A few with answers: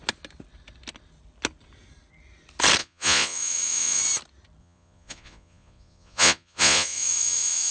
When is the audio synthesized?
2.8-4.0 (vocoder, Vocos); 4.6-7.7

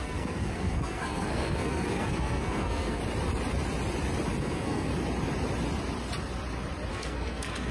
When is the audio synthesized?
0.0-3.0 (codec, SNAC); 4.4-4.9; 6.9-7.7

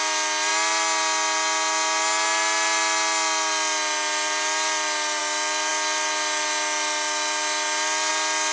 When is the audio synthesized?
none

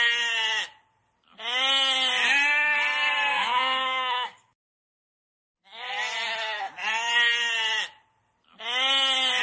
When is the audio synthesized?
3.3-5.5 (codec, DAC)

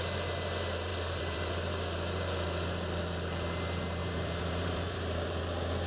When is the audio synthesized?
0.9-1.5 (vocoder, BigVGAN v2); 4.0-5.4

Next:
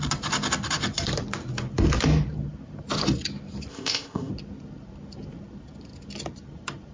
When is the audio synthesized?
3.7-4.3 (codec, ZipCodec)

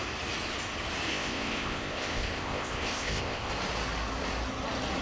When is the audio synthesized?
1.1-3.5 (codec, ZipCodec)

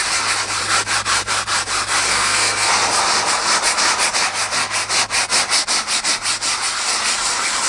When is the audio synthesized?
2.1-2.7 (codec, SNAC)